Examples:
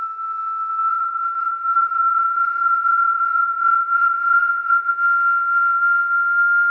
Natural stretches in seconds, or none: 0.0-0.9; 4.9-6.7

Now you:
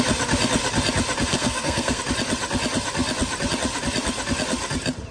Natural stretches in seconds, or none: 0.0-1.3; 2.0-5.1

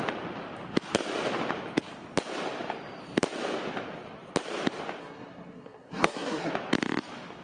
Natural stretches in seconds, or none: 0.0-5.0; 6.5-7.4

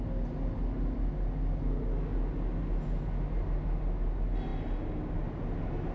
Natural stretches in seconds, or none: 0.0-5.9

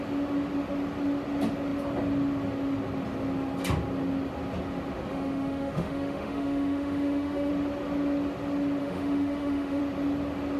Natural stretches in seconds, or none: 0.0-5.1; 7.5-8.8; 9.8-10.6

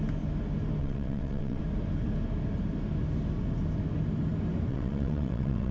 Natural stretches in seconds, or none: 0.0-0.8; 1.6-4.7

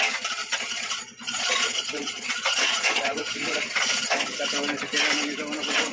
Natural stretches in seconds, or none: 0.0-0.4; 3.9-5.9

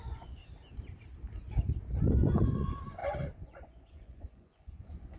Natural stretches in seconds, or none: 0.4-2.1